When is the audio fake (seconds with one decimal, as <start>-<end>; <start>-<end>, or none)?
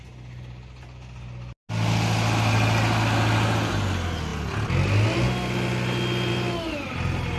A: none